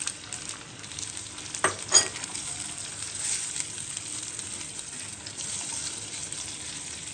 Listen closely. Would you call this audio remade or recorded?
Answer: recorded